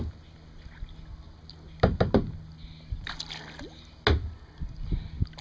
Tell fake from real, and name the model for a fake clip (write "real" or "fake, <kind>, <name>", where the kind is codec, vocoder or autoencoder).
real